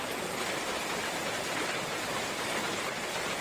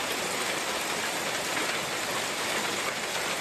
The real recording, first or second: second